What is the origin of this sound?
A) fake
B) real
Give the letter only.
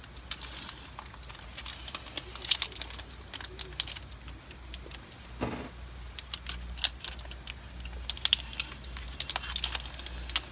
B